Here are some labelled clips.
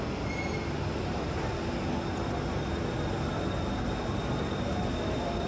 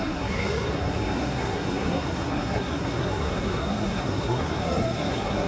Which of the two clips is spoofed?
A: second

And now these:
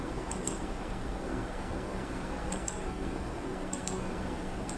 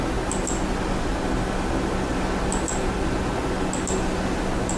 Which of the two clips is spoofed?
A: first